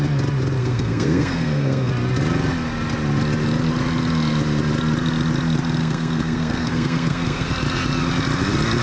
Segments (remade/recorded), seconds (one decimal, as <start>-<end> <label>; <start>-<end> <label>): 0.0-0.6 recorded; 0.6-1.9 remade; 1.9-5.8 recorded; 5.8-7.5 remade; 7.5-8.8 recorded